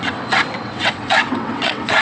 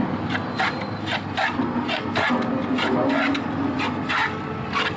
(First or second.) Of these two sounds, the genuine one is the second